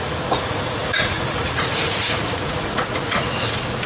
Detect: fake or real fake